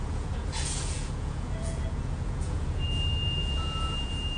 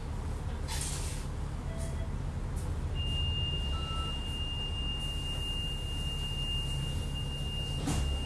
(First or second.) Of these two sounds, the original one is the second